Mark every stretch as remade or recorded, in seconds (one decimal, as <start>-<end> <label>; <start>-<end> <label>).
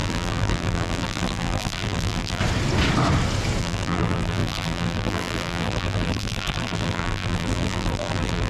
0.0-2.4 remade; 2.4-3.6 recorded; 3.6-8.5 remade